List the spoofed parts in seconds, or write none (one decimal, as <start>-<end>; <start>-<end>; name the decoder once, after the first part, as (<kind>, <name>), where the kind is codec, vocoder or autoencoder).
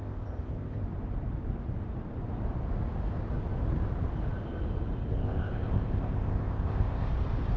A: 0.0-0.8 (codec, ZipCodec); 5.1-7.1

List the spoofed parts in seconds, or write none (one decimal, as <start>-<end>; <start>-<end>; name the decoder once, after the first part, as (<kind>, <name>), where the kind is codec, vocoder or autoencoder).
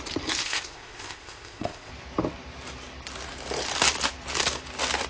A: 0.4-1.9 (codec, ZipCodec)